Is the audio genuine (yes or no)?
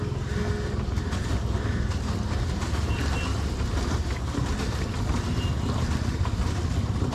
yes